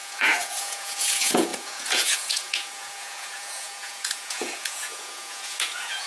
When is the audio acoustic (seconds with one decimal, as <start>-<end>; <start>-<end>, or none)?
none